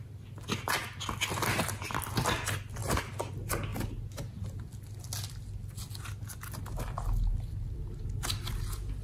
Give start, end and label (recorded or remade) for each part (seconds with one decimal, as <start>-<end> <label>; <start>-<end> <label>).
0.0-9.0 recorded